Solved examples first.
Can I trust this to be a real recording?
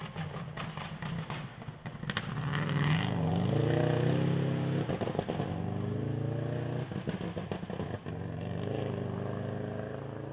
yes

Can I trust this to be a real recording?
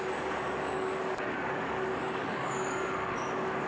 no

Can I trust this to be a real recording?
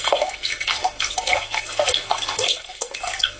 no